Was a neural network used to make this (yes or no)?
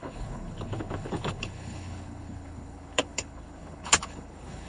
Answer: yes